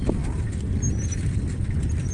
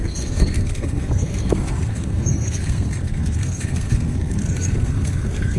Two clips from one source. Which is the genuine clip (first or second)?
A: first